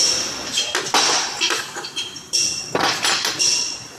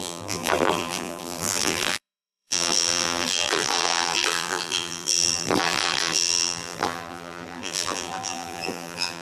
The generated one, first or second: second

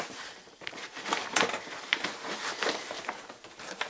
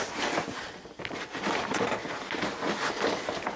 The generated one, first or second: first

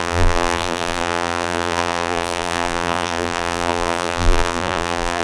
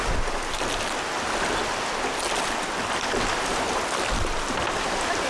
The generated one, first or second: first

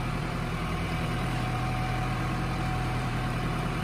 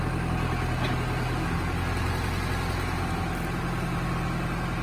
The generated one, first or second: first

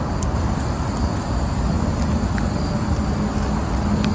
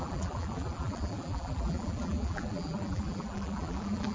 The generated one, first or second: second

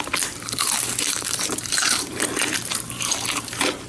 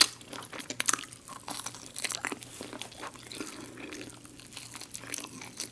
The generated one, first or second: first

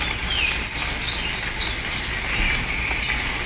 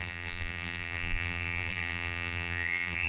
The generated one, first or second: second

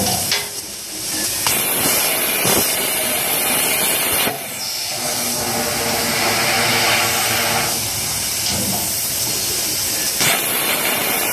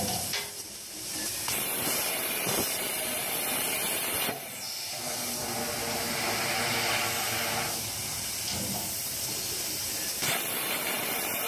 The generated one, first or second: second